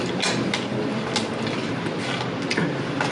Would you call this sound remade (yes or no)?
no